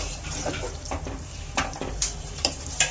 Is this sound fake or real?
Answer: fake